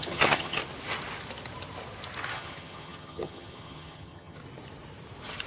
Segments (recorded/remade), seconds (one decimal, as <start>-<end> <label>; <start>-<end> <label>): 0.0-0.6 remade; 0.6-2.3 recorded; 2.3-4.4 remade; 4.4-5.5 recorded